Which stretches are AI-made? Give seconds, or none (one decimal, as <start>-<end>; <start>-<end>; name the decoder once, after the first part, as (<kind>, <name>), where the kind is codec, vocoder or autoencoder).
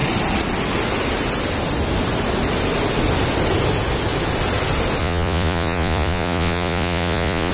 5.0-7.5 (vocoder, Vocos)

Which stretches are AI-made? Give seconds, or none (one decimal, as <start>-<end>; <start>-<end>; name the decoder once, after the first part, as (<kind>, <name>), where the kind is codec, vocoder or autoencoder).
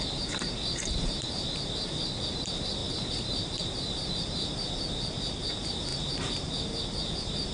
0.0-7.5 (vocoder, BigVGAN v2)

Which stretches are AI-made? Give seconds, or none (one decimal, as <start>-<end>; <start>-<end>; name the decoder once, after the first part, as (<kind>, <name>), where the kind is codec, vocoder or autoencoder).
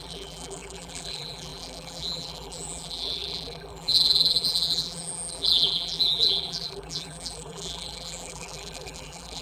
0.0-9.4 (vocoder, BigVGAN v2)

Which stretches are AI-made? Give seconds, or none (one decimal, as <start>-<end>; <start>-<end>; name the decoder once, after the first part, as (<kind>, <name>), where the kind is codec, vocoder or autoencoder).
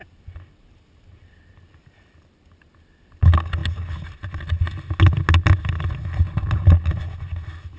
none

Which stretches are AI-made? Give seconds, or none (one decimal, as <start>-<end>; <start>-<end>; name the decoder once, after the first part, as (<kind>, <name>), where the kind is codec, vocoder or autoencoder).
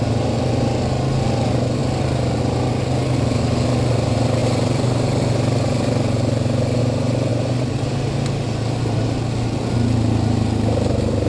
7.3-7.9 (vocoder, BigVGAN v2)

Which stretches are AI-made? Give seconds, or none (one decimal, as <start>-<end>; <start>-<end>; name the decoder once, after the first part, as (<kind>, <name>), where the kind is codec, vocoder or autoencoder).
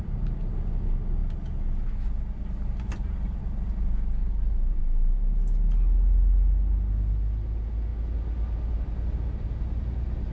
4.2-4.8 (vocoder, BigVGAN v2)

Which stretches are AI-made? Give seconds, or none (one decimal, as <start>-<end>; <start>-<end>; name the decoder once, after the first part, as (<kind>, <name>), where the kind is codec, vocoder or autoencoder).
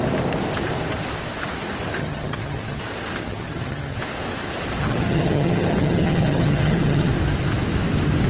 2.0-2.8 (vocoder, HiFi-GAN); 3.2-4.0; 4.8-7.1